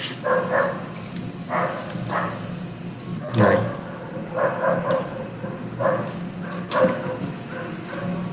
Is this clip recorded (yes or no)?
yes